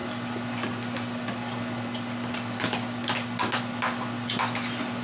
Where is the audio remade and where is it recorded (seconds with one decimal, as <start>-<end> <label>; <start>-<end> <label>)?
0.0-5.0 recorded